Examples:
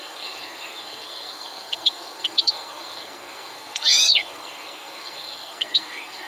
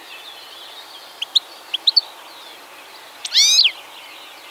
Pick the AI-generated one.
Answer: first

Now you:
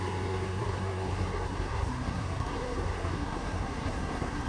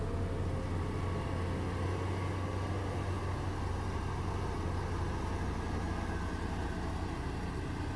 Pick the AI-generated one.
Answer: first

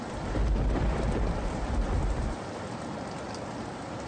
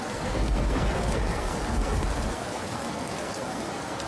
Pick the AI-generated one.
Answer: second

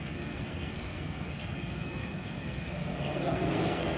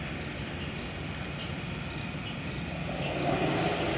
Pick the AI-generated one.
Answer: first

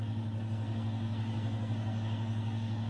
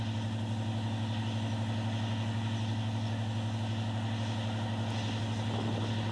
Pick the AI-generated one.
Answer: first